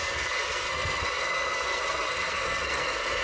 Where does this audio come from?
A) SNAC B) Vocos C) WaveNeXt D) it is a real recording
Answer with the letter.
A